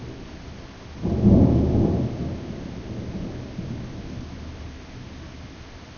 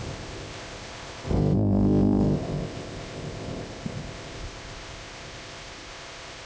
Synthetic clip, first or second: second